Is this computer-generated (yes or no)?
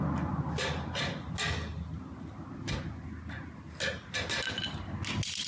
no